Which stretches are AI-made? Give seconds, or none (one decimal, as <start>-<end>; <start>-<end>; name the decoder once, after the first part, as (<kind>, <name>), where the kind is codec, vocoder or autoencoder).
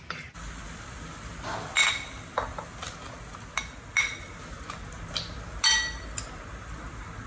none